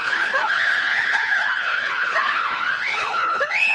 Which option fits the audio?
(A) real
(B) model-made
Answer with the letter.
B